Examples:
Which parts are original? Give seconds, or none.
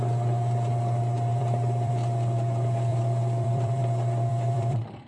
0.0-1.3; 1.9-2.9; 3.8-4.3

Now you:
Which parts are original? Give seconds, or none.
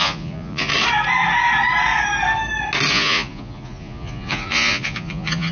0.7-2.9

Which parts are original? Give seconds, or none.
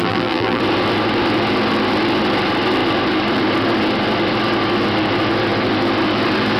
0.6-6.6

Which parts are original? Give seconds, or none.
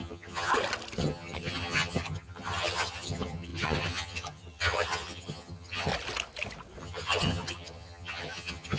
0.5-1.0; 5.9-6.8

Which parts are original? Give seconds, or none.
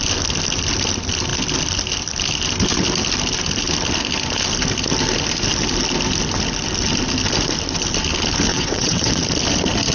0.0-8.5; 9.1-9.9